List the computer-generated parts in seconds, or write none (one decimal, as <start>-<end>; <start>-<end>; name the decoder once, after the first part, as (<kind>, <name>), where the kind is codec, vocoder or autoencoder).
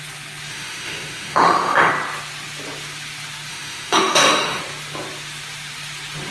0.5-1.9 (autoencoder, DAC-VAE); 3.5-4.6